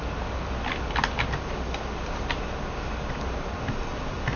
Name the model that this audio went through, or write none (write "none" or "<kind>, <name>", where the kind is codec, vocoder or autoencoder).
none